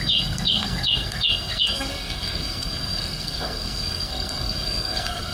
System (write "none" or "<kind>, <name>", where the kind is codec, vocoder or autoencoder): codec, SNAC